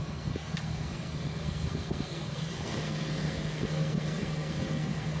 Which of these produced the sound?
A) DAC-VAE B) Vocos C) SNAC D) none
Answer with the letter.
C